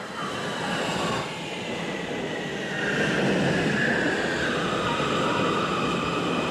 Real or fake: real